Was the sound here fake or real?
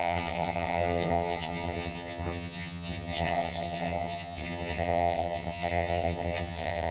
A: fake